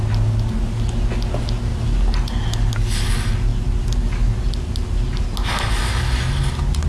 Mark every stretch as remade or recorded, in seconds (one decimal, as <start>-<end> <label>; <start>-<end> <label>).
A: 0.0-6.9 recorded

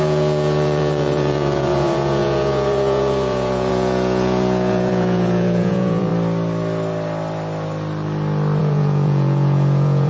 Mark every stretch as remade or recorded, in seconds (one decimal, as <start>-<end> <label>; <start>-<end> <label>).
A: 0.0-6.1 remade; 6.1-8.6 recorded; 8.6-10.1 remade

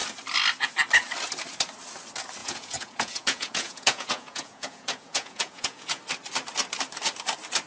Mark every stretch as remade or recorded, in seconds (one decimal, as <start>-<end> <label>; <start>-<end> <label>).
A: 0.0-2.4 recorded; 2.4-6.0 remade; 6.0-7.7 recorded

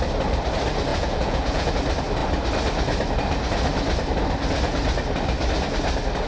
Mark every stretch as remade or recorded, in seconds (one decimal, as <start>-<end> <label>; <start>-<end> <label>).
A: 0.0-0.9 recorded; 0.9-1.7 remade; 1.7-6.3 recorded